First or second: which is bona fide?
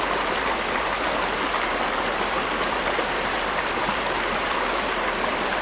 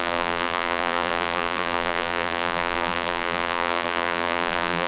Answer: first